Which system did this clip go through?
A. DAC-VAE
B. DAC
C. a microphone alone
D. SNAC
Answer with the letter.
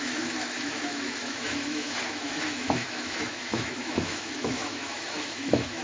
A